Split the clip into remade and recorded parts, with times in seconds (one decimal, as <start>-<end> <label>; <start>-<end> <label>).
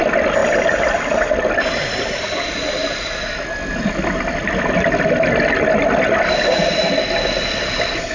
0.0-8.1 recorded